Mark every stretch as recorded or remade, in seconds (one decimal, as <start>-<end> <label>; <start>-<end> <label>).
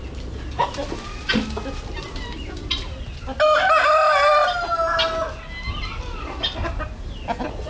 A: 0.0-7.7 recorded